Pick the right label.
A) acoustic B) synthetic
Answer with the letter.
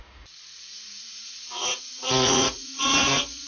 B